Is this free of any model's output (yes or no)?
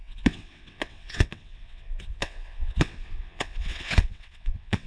no